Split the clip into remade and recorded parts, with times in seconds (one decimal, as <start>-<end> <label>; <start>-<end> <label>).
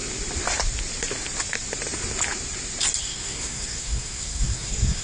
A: 0.0-3.0 recorded; 3.0-5.0 remade